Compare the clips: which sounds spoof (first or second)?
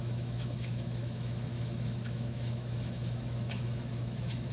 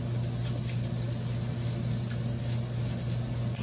first